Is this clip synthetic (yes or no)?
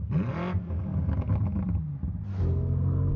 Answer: no